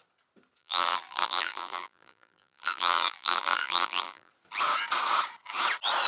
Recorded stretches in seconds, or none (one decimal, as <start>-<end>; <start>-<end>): 0.0-0.6; 4.3-6.1